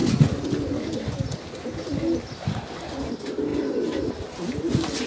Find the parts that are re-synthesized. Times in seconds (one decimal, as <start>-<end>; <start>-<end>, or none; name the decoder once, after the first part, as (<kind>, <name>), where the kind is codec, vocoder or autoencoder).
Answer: 3.1-5.1 (vocoder, BigVGAN v2)